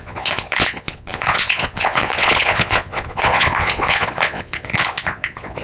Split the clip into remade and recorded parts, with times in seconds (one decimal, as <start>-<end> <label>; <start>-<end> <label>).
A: 0.0-5.6 remade